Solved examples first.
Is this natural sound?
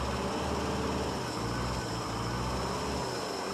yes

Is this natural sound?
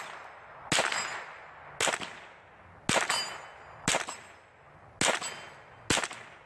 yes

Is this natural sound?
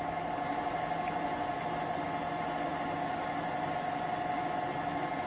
yes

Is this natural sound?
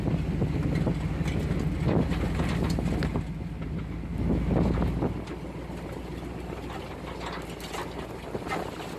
yes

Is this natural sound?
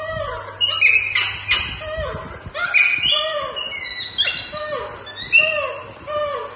yes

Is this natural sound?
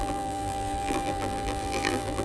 no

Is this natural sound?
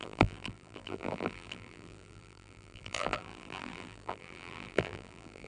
no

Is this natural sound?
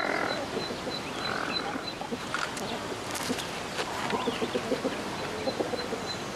yes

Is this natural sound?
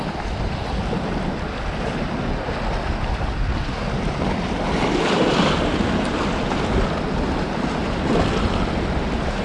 yes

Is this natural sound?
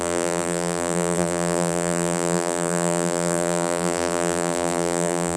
no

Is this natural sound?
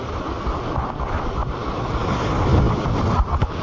yes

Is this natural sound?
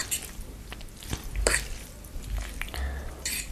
yes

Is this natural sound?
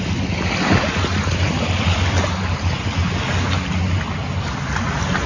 yes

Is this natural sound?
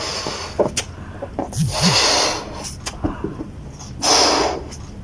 yes